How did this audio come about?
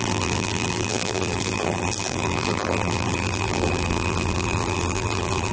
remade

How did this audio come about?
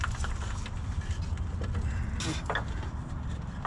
recorded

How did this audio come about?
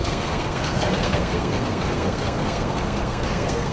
remade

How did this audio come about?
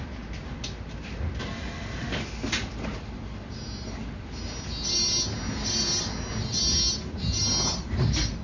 recorded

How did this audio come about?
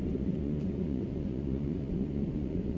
remade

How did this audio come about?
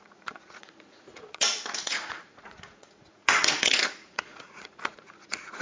remade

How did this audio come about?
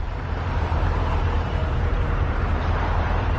remade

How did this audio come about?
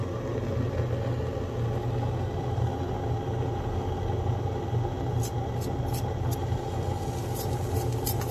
recorded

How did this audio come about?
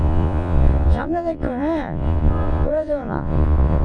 remade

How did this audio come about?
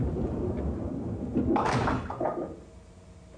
recorded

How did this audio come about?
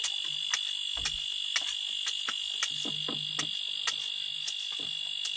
recorded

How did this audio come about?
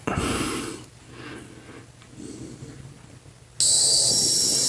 recorded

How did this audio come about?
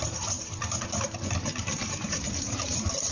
remade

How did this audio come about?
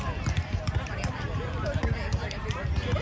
recorded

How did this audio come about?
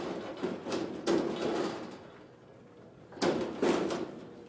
recorded